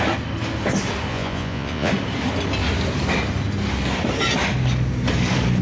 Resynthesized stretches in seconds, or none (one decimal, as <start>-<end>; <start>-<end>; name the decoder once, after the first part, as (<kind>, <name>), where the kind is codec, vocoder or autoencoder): 1.1-1.9 (vocoder, Vocos)